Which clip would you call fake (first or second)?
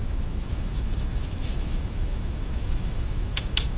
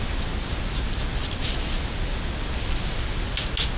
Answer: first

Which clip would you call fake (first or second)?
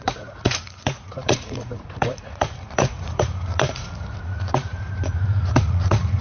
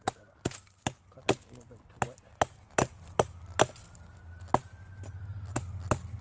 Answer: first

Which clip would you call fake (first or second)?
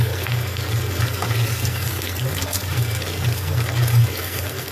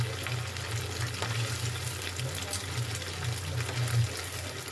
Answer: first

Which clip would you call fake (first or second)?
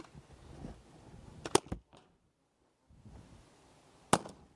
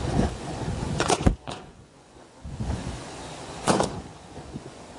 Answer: second